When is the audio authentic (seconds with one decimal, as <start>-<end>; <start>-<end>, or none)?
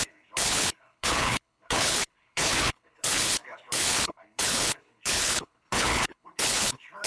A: none